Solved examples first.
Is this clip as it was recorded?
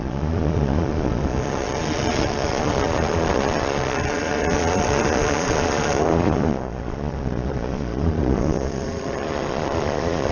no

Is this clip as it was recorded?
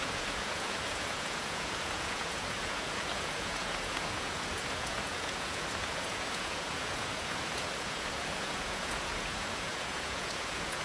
no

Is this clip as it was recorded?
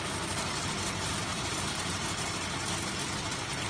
yes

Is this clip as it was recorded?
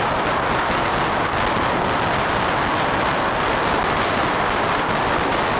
yes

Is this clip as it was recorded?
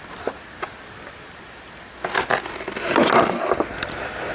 yes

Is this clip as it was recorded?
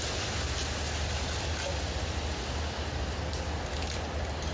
yes